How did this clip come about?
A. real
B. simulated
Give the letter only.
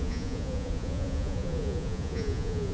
B